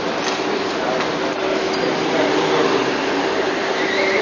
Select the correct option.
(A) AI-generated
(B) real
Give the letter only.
B